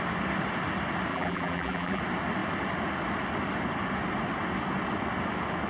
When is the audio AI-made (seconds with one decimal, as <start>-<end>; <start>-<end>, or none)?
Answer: 1.1-2.0